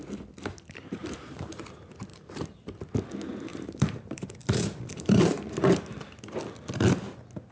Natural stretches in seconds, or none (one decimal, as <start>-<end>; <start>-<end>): 0.0-1.0; 1.6-2.1; 2.8-3.5; 5.4-7.5